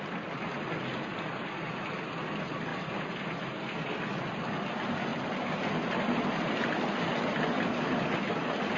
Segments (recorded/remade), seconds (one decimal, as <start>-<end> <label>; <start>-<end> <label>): 0.0-1.1 recorded; 1.1-1.7 remade; 1.7-2.7 recorded; 2.7-3.5 remade; 3.5-8.8 recorded

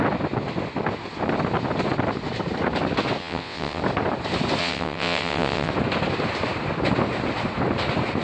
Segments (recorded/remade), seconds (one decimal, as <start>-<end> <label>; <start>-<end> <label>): 0.0-3.2 recorded; 3.2-3.8 remade; 3.8-4.6 recorded; 4.6-5.7 remade; 5.7-8.2 recorded

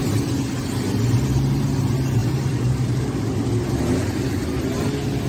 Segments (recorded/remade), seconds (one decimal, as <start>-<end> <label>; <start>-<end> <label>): 0.0-2.2 recorded; 2.2-3.2 remade; 3.2-5.3 recorded

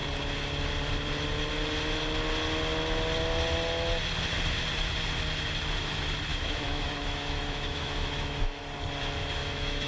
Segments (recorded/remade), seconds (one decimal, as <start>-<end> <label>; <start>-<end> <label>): 0.0-6.3 recorded; 6.3-8.6 remade; 8.6-9.4 recorded; 9.4-9.9 remade

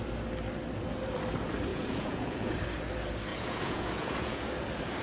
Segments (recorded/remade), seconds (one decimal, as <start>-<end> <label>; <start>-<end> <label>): 0.0-1.7 recorded; 1.7-2.5 remade; 2.5-3.3 recorded; 3.3-4.5 remade; 4.5-5.0 recorded

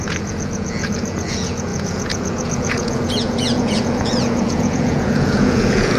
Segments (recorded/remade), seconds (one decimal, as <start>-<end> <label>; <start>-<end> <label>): 0.0-6.0 remade

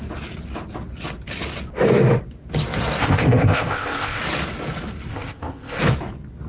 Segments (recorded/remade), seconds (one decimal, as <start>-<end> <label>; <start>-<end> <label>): 0.0-3.0 recorded; 3.0-4.2 remade; 4.2-5.1 recorded; 5.1-5.8 remade; 5.8-6.5 recorded